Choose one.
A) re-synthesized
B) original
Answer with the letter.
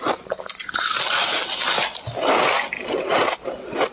B